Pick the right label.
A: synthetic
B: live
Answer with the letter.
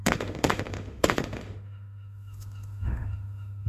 A